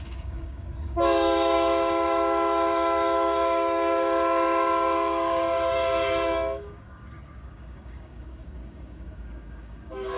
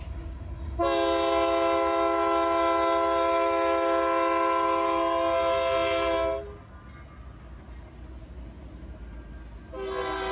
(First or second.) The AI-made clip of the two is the first